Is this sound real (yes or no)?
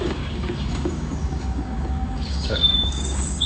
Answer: no